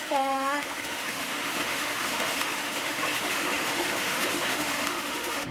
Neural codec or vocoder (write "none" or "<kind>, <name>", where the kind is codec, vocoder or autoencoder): autoencoder, DAC-VAE